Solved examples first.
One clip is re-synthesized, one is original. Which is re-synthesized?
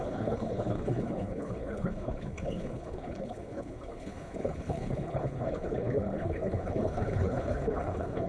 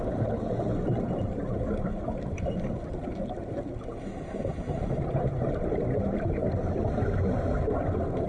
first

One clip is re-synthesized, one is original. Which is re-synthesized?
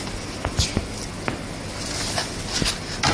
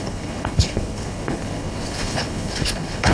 second